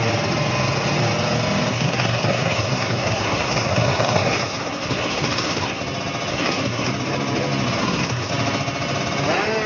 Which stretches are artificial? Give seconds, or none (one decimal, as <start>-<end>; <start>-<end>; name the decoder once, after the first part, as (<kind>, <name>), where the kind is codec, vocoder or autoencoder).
1.7-5.8 (codec, SNAC); 6.3-6.9; 7.8-8.3